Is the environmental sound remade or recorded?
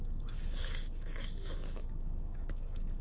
remade